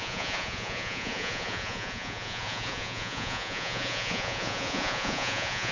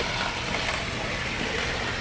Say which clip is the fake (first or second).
first